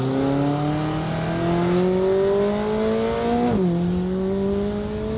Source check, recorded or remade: recorded